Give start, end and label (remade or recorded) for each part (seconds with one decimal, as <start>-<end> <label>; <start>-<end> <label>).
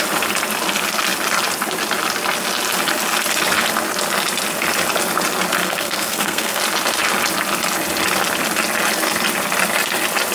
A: 0.0-5.6 recorded; 5.6-6.6 remade; 6.6-10.3 recorded